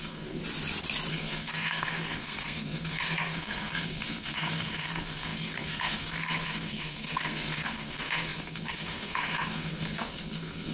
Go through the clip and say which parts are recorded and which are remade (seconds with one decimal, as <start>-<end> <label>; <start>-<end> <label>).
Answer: 0.0-0.4 remade; 0.4-1.1 recorded; 1.1-10.7 remade